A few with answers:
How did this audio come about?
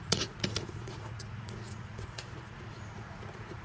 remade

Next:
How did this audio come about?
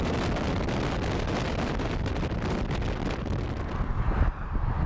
recorded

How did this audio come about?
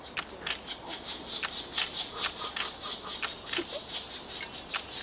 recorded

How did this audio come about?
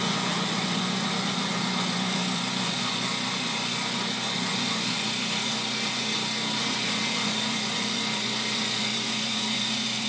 remade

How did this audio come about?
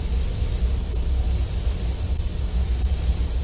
recorded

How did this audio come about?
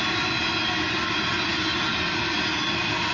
recorded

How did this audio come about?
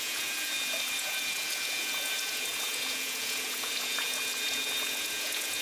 remade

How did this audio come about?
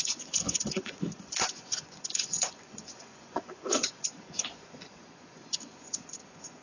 remade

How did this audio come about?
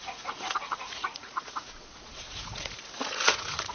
remade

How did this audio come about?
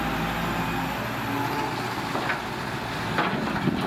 recorded